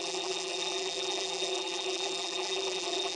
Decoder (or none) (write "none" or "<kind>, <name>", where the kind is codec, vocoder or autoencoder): vocoder, BigVGAN v2